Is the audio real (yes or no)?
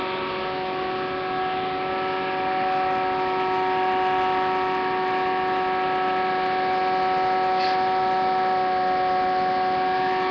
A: yes